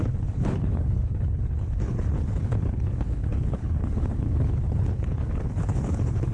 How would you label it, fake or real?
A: fake